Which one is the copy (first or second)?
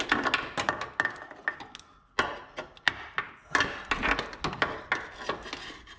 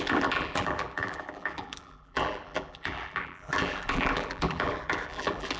second